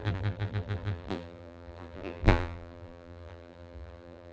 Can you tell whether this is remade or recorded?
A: remade